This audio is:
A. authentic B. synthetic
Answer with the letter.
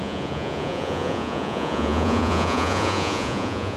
B